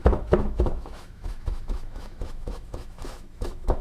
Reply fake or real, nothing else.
fake